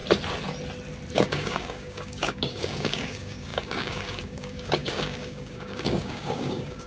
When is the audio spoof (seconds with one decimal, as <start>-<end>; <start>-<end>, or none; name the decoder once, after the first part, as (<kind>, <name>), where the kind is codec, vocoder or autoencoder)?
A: 1.1-6.9 (codec, DAC)